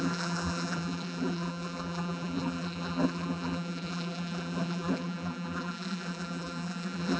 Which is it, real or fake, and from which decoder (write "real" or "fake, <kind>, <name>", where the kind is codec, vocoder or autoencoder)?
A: fake, vocoder, BigVGAN v2